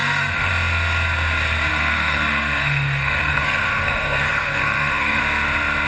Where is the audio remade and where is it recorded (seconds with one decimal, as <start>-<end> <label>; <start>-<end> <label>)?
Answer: 0.0-0.5 remade; 0.5-1.7 recorded; 1.7-5.2 remade; 5.2-5.9 recorded

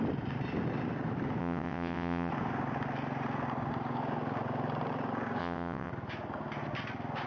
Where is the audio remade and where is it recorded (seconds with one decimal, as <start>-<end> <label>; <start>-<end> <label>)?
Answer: 0.0-1.4 recorded; 1.4-2.3 remade; 2.3-5.4 recorded; 5.4-5.9 remade; 5.9-7.3 recorded